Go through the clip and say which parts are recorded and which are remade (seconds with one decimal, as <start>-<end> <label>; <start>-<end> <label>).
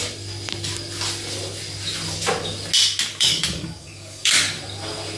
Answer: 0.0-3.1 recorded; 3.1-4.6 remade; 4.6-5.2 recorded